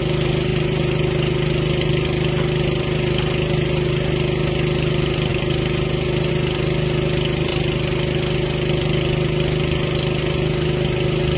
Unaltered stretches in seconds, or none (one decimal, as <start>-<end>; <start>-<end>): 0.0-11.4